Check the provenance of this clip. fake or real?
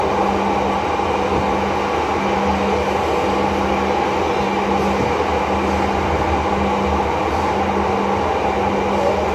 real